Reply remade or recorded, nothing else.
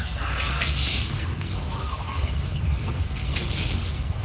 remade